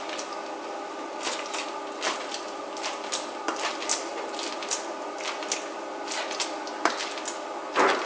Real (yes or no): yes